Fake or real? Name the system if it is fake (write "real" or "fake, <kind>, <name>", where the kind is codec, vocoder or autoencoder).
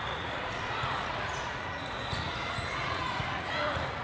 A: fake, vocoder, Vocos